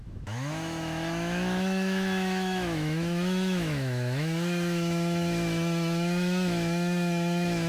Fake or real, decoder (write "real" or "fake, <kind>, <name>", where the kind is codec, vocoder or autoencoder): fake, autoencoder, DAC-VAE